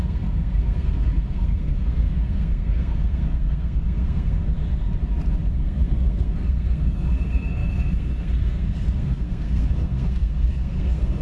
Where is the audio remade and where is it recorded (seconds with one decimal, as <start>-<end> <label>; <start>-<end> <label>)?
0.0-4.9 remade; 4.9-5.5 recorded; 5.5-11.2 remade